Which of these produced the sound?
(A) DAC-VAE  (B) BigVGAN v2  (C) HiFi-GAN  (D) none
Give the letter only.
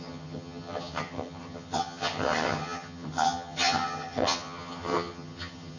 C